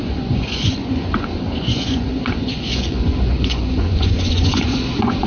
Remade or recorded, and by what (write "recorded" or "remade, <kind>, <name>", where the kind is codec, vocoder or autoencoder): remade, vocoder, Vocos